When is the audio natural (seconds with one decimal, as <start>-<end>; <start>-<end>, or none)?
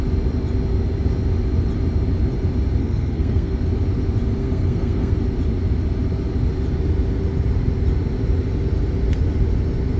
0.0-2.8; 3.6-4.4; 5.1-10.0